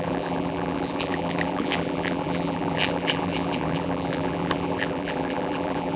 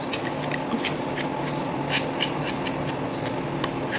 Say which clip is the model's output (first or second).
first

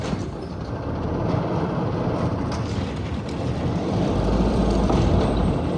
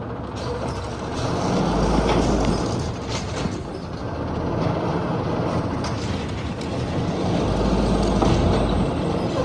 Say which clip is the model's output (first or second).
first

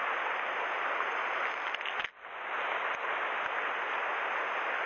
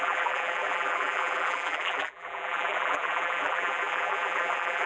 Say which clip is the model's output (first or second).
second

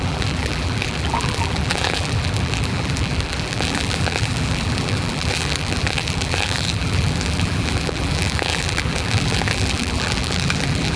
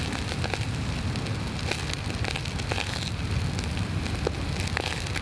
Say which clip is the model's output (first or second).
first